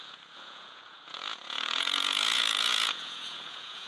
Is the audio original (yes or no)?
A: no